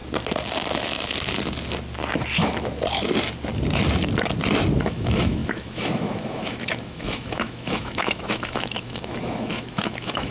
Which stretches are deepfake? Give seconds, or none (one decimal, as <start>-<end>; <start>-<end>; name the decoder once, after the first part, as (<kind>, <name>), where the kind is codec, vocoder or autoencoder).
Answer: 4.8-10.3 (autoencoder, DAC-VAE)